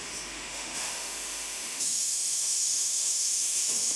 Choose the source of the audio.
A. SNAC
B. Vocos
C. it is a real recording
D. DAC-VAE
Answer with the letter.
D